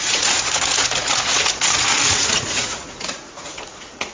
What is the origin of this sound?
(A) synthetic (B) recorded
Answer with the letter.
A